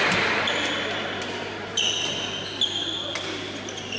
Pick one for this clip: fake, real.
real